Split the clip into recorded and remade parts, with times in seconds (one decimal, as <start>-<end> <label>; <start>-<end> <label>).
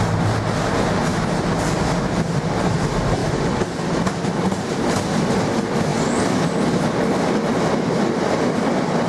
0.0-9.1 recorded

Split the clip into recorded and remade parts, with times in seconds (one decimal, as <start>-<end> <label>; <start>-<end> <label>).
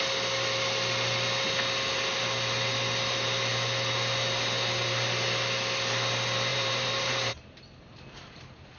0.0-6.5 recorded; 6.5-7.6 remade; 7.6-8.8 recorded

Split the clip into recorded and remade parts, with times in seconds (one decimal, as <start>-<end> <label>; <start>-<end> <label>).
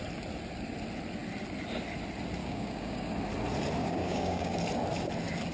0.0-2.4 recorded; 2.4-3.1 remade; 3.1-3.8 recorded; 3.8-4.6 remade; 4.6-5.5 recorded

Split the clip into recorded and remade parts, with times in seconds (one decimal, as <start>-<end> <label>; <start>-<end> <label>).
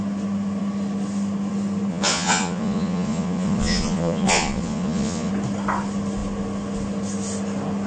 0.0-1.9 recorded; 1.9-5.3 remade; 5.3-7.9 recorded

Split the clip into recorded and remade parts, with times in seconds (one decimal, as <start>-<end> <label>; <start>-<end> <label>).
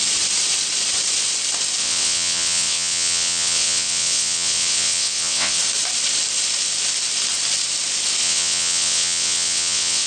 0.0-1.8 recorded; 1.8-5.6 remade; 5.6-8.2 recorded; 8.2-10.1 remade